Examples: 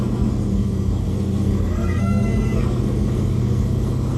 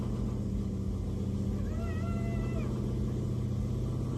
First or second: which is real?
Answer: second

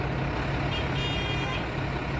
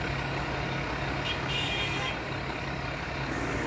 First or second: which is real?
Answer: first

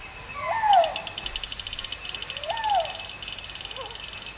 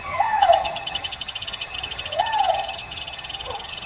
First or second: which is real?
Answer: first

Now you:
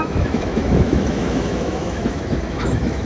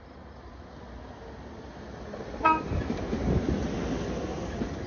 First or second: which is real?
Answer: second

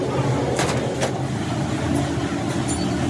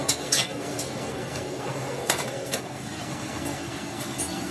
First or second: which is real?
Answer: first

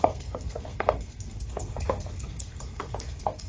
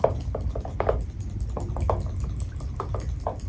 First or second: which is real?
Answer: second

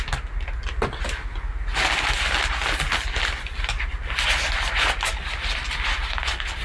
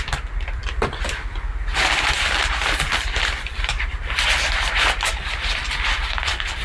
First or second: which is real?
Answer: first